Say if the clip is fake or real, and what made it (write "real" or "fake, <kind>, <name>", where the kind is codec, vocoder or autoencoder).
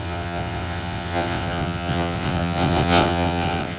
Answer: fake, vocoder, WaveNeXt